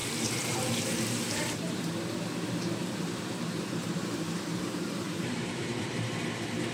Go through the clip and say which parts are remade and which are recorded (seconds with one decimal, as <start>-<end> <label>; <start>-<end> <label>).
0.0-1.7 remade; 1.7-2.8 recorded; 2.8-6.2 remade; 6.2-6.7 recorded